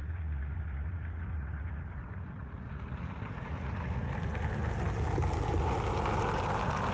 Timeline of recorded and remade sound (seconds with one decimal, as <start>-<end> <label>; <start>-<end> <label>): 0.0-4.1 remade; 4.1-6.9 recorded